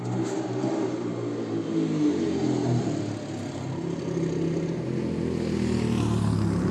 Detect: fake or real real